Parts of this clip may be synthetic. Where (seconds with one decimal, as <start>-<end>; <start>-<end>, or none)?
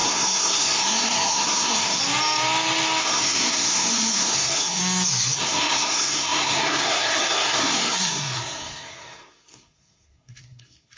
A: 0.0-2.0; 3.0-4.8; 5.4-11.0